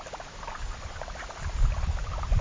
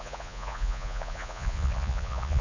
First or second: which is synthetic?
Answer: second